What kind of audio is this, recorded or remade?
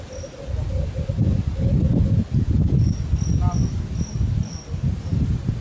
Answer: recorded